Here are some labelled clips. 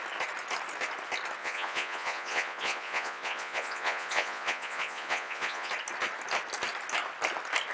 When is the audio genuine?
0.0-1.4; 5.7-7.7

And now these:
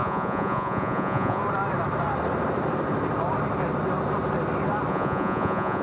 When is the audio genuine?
1.4-4.9

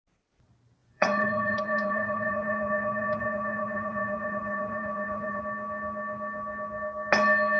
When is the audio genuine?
0.0-0.8; 5.4-7.6

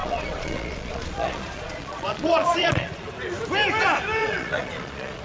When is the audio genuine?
3.1-4.2

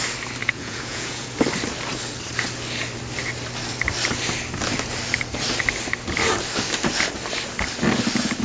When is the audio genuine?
0.0-0.4; 1.3-8.4

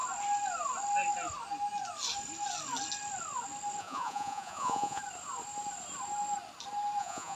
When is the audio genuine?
0.0-3.8; 5.0-7.0

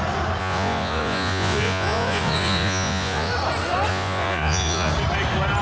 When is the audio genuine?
0.0-0.4; 3.3-3.9; 4.9-5.6

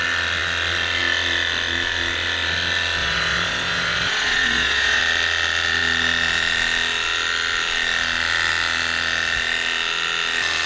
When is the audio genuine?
0.0-3.0; 5.0-10.7